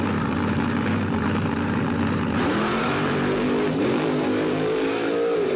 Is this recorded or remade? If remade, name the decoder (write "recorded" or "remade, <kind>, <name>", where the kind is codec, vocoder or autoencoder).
remade, vocoder, BigVGAN v2